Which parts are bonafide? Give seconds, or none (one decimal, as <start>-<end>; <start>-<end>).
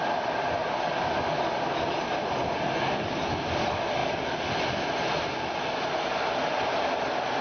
0.0-7.4